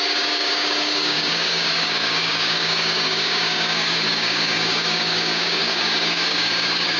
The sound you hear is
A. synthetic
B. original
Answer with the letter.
A